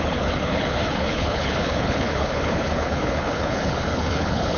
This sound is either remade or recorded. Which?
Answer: remade